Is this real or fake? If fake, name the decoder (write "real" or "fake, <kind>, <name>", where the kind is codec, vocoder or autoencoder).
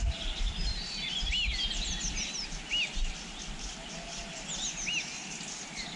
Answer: real